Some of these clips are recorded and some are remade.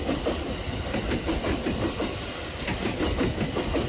recorded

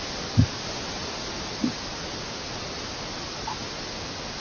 recorded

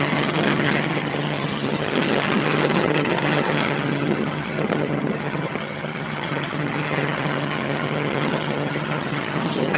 remade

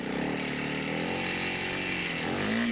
recorded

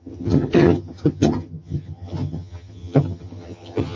remade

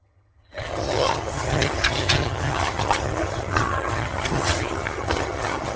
remade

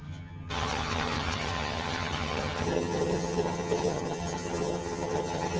remade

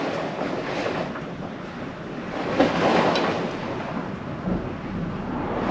recorded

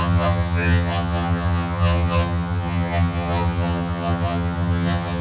remade